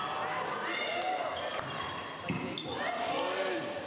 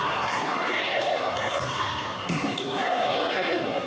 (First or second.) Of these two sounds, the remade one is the second